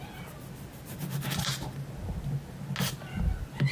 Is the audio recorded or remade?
recorded